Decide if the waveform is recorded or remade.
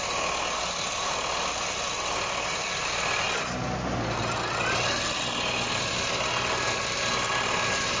recorded